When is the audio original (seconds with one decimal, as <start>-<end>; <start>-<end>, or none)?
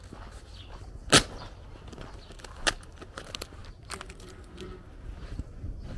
0.0-6.0